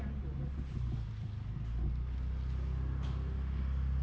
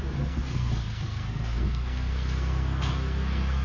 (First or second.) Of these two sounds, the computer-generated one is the second